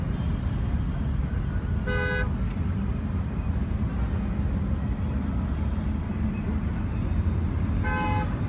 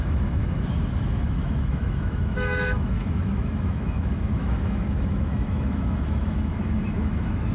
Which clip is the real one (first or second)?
first